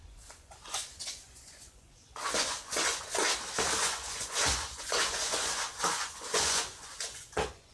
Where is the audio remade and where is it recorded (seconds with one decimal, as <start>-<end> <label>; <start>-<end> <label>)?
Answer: 0.0-3.2 remade; 3.2-3.8 recorded; 3.8-7.7 remade